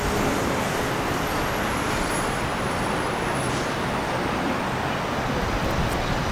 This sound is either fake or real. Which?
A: real